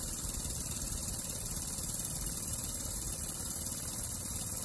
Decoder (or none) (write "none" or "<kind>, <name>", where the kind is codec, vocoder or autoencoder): vocoder, BigVGAN v2